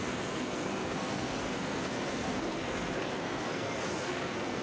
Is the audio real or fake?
fake